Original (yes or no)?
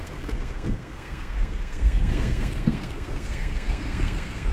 no